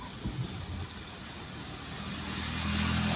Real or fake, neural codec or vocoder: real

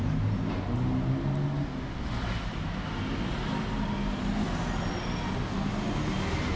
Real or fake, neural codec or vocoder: real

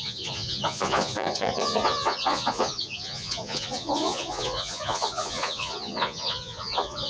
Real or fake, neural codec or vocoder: fake, vocoder, Vocos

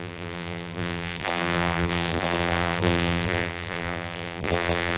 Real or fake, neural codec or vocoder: fake, vocoder, BigVGAN v2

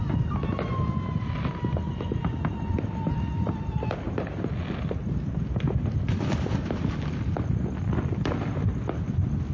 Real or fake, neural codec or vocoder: real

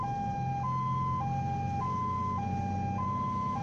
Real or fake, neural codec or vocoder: real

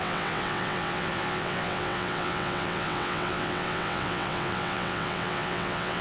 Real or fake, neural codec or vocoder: fake, vocoder, WaveNeXt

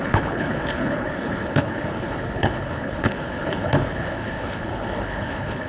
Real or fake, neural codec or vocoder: fake, codec, HILCodec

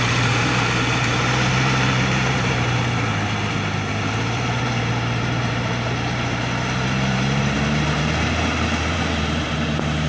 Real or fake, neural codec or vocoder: fake, vocoder, BigVGAN v2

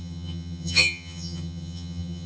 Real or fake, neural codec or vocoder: fake, vocoder, HiFi-GAN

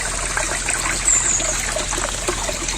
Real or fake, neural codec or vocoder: real